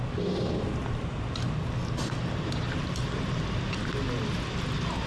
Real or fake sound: real